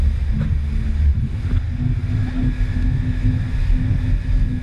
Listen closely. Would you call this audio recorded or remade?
recorded